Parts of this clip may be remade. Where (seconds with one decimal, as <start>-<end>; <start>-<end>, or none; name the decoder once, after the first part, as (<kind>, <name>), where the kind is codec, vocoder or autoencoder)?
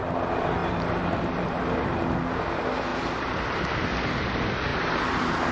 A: 0.6-1.6 (vocoder, BigVGAN v2); 2.9-3.6; 4.7-5.5